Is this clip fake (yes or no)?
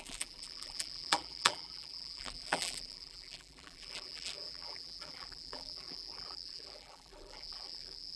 yes